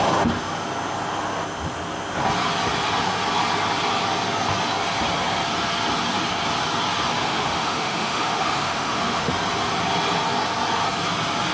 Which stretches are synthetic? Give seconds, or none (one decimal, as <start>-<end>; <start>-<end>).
7.2-9.3